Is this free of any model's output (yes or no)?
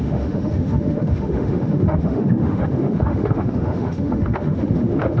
no